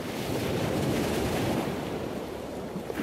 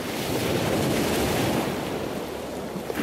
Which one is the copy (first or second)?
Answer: first